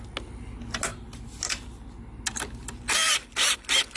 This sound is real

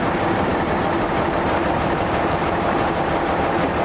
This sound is real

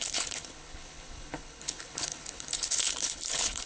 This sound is fake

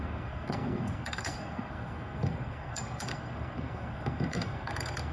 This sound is fake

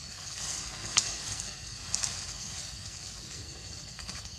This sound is fake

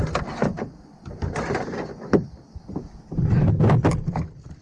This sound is real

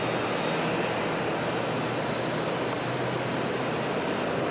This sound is real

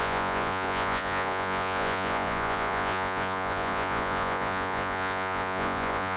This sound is fake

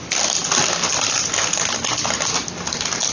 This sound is real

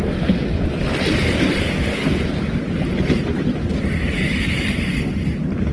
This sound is real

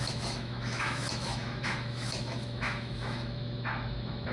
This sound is fake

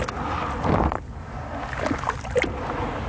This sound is real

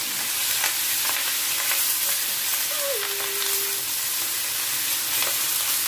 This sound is real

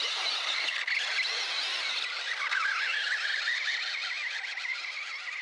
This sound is real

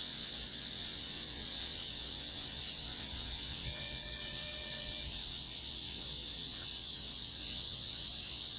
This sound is fake